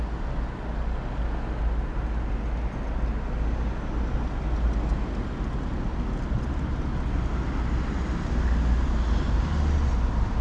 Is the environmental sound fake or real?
real